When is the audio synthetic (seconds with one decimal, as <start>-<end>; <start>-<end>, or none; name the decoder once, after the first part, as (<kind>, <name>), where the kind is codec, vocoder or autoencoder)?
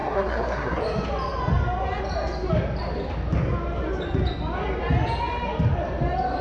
0.0-0.8 (codec, SNAC)